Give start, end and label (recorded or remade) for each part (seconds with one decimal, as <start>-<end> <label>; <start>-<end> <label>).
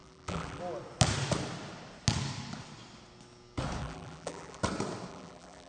0.0-0.6 remade; 0.6-3.8 recorded; 3.8-4.6 remade; 4.6-5.1 recorded; 5.1-5.7 remade